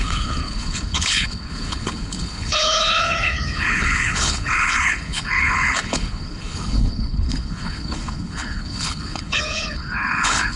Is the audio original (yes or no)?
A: no